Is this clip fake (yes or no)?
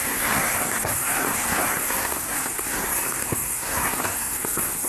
yes